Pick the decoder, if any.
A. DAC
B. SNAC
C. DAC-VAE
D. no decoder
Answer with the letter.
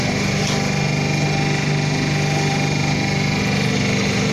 D